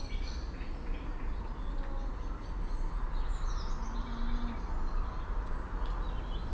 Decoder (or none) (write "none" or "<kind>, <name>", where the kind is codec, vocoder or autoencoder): none